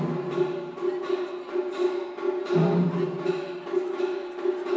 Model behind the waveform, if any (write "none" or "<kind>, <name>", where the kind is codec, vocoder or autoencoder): none